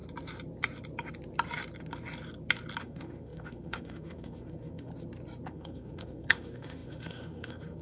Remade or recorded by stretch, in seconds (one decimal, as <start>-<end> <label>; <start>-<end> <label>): 0.0-2.8 recorded; 2.8-4.9 remade; 4.9-5.5 recorded; 5.5-7.8 remade